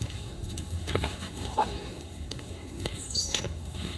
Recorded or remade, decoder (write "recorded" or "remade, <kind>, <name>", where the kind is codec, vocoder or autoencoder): remade, codec, SNAC